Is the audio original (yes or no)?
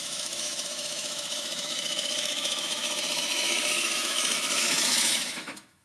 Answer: no